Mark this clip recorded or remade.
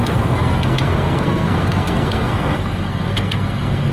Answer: remade